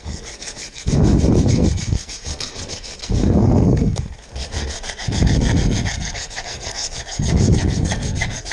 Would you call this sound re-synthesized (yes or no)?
yes